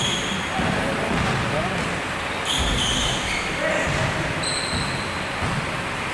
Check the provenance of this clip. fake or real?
real